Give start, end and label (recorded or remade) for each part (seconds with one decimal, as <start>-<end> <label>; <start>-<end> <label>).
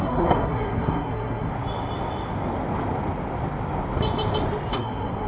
0.0-1.5 remade; 1.5-4.7 recorded; 4.7-5.3 remade